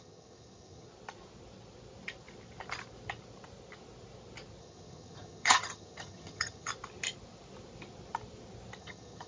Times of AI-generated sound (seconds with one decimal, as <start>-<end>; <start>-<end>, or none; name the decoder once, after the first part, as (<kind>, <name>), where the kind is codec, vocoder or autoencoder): 0.0-0.9 (vocoder, HiFi-GAN); 4.6-6.7; 8.8-9.3